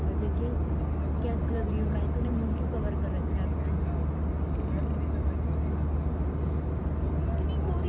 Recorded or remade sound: recorded